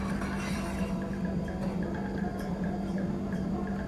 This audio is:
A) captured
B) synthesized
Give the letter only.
A